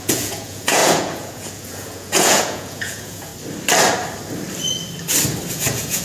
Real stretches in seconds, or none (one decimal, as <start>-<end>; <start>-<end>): 3.3-5.5